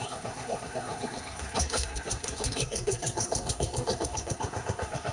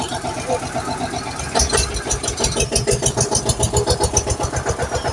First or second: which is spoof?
first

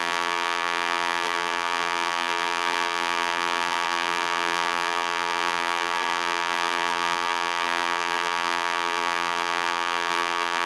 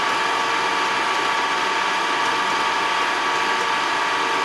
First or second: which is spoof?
first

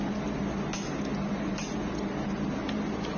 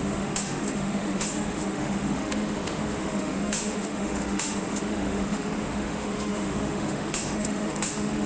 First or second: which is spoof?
second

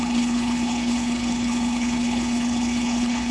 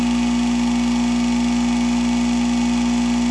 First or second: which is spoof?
first